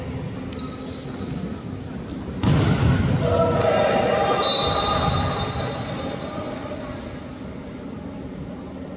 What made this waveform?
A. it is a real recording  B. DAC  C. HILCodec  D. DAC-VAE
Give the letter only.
A